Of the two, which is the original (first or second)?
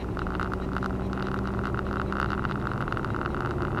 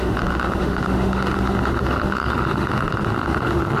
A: first